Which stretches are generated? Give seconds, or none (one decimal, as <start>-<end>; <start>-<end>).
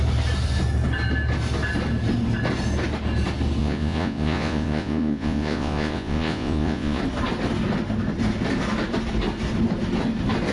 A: 3.6-7.0